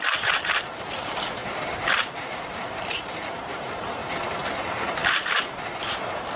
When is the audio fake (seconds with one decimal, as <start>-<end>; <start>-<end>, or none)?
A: 0.0-4.0; 4.5-6.4